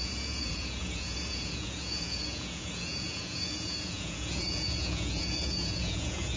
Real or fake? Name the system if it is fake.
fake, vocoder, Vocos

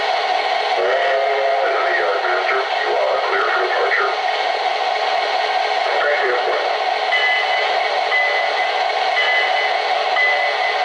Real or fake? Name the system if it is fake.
real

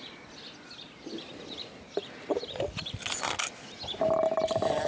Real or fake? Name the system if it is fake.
real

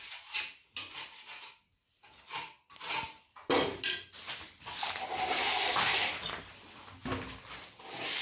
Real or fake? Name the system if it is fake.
real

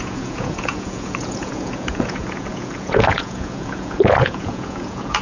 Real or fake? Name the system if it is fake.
fake, vocoder, Vocos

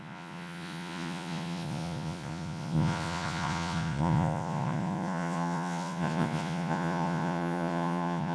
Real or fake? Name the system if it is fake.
fake, vocoder, Vocos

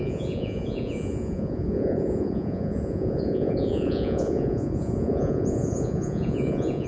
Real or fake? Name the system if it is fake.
fake, vocoder, Vocos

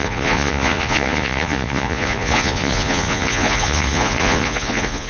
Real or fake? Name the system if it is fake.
fake, vocoder, Vocos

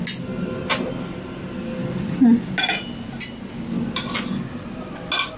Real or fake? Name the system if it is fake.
real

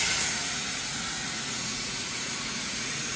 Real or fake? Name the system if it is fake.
fake, vocoder, Vocos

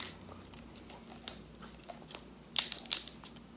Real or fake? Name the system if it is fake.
real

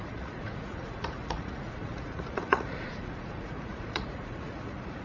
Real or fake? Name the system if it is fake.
fake, vocoder, Vocos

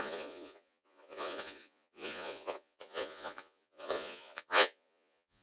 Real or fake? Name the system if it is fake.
fake, vocoder, Vocos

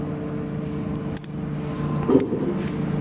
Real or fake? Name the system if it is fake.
real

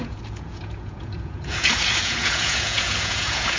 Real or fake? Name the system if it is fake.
fake, vocoder, Vocos